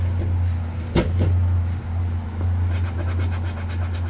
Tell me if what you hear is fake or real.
real